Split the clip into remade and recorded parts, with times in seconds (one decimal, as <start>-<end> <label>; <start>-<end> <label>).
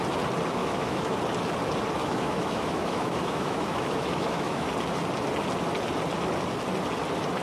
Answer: 0.0-0.6 recorded; 0.6-1.2 remade; 1.2-2.0 recorded; 2.0-4.7 remade; 4.7-7.4 recorded